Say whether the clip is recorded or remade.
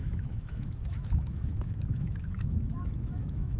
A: remade